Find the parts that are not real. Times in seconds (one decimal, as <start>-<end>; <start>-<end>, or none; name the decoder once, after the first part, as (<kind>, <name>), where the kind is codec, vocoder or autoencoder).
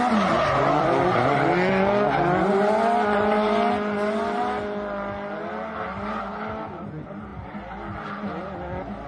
none